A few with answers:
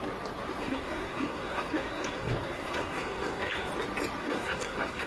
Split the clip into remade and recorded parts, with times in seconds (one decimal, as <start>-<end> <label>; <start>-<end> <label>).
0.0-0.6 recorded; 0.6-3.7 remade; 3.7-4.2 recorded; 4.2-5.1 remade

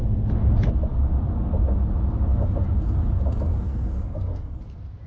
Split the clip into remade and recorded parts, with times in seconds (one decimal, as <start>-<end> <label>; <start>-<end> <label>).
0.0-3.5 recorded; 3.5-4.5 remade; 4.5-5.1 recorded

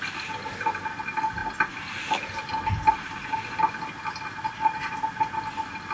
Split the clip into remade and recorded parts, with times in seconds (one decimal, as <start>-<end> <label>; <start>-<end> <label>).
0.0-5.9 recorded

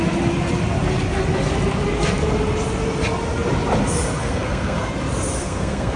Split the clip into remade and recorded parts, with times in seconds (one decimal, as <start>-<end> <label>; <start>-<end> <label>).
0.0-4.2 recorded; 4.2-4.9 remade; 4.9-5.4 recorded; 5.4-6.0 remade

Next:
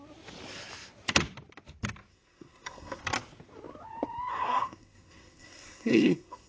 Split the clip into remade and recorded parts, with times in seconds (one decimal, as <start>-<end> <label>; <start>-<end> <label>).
0.0-2.1 recorded; 2.1-3.0 remade; 3.0-4.3 recorded; 4.3-6.5 remade